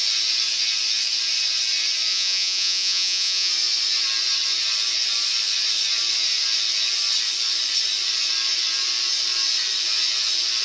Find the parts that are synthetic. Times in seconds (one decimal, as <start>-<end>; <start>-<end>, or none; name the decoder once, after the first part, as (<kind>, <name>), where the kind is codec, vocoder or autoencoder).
2.1-3.5 (vocoder, Vocos)